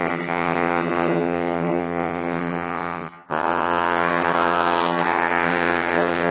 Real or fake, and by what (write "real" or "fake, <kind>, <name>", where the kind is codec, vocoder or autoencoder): fake, vocoder, HiFi-GAN